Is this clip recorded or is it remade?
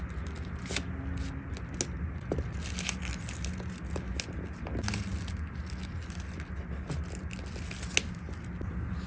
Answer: recorded